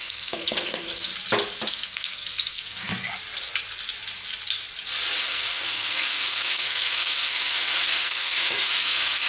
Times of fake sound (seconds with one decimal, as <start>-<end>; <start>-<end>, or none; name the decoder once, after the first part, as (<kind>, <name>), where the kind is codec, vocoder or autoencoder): 0.0-1.1 (codec, SNAC); 1.7-2.9; 5.2-9.3